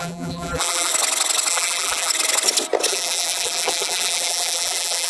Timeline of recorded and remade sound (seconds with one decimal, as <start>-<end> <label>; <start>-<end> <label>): 0.0-0.9 remade; 0.9-1.5 recorded; 1.5-2.1 remade; 2.1-2.9 recorded; 2.9-5.1 remade